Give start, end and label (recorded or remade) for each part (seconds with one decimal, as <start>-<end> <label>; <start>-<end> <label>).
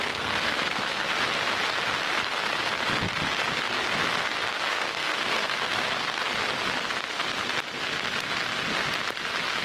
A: 0.0-1.1 remade; 1.1-4.7 recorded; 4.7-6.1 remade; 6.1-9.6 recorded